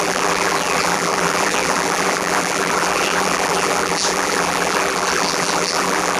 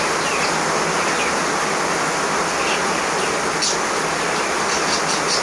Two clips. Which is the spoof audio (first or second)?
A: first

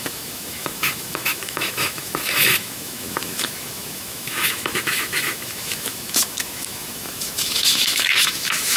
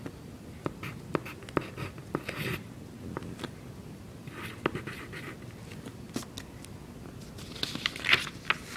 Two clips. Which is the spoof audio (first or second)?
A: first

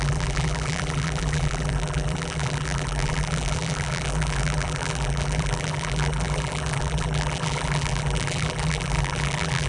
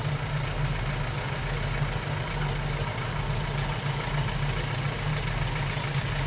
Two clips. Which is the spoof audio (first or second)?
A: first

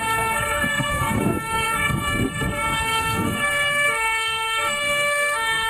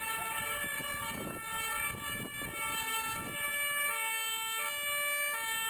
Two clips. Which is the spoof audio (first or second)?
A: first